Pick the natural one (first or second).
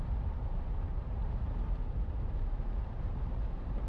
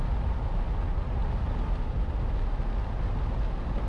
second